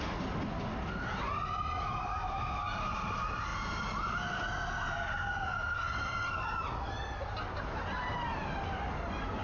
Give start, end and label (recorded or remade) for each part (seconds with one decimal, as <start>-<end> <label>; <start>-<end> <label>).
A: 0.0-9.4 recorded